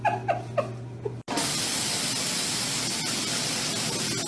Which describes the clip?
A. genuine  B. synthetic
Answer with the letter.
A